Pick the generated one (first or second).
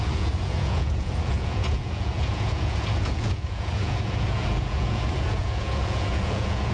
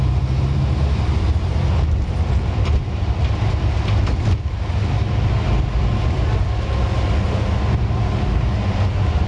first